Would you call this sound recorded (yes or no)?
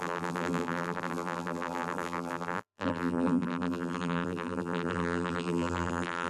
no